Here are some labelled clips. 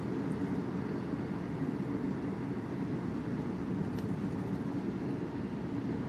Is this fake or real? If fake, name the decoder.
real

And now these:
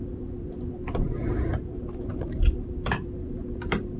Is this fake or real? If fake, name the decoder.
fake, vocoder, BigVGAN v2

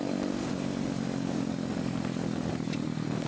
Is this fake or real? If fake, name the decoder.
real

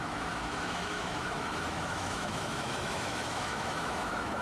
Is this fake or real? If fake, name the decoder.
fake, autoencoder, DAC-VAE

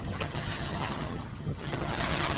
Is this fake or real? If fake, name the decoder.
fake, vocoder, HiFi-GAN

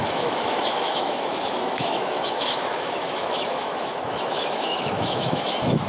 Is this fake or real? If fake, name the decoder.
fake, autoencoder, DAC-VAE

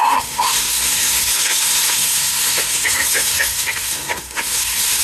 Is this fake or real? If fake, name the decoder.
fake, codec, SNAC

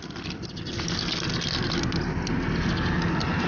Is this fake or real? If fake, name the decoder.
real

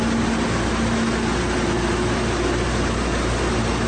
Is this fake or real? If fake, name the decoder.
real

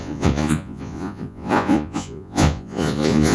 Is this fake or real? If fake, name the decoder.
fake, vocoder, Vocos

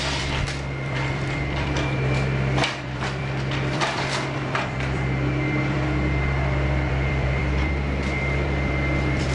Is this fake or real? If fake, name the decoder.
fake, vocoder, BigVGAN v2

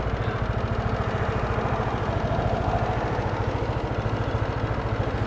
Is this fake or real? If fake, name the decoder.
real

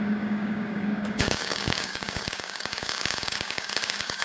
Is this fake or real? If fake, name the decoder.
fake, codec, DAC